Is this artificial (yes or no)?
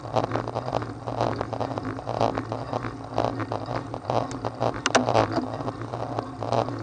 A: no